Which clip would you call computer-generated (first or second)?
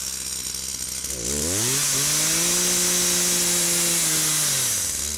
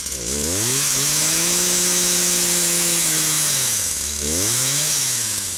second